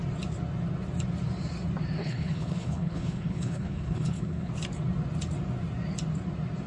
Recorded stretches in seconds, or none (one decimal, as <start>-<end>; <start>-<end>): 0.0-2.0; 4.5-6.7

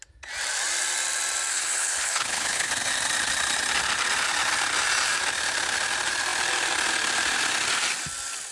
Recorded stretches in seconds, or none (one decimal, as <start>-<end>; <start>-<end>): 0.0-1.5; 2.7-8.5

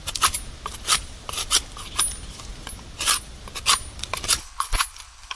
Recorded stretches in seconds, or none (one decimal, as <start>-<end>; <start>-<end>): 0.0-4.4

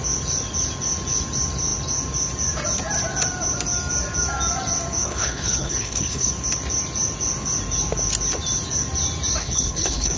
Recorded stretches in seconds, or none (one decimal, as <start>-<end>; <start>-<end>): 0.0-5.0; 6.3-9.4